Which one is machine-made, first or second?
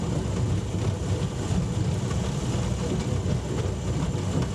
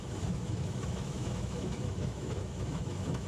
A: second